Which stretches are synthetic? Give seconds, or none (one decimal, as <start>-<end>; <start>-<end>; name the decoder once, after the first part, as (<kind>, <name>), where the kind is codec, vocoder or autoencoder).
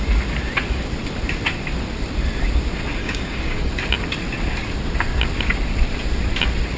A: 3.0-3.7 (codec, DAC)